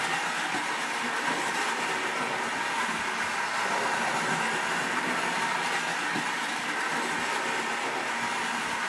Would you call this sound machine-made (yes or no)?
no